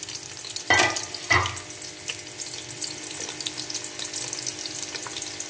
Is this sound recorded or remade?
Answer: recorded